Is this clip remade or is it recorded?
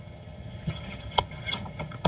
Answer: remade